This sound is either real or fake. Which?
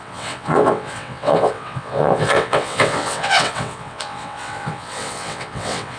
fake